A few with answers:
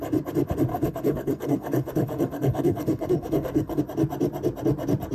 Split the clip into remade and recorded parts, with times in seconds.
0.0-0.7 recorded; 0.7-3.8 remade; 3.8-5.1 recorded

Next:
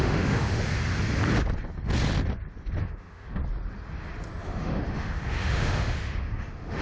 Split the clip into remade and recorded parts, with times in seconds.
0.0-0.8 remade; 0.8-2.8 recorded; 2.8-3.4 remade; 3.4-4.4 recorded; 4.4-6.8 remade